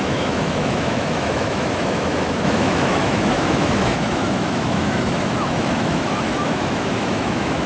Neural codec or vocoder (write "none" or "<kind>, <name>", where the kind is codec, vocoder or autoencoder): autoencoder, DAC-VAE